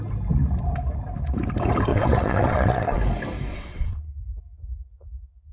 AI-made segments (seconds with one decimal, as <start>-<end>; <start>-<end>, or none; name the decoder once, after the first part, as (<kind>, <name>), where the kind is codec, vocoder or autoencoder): 1.9-3.0 (vocoder, WaveNeXt); 3.5-4.1